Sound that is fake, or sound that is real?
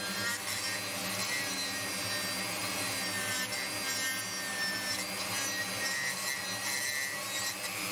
real